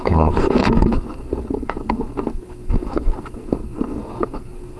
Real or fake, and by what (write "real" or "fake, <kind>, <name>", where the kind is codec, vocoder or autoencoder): fake, codec, SNAC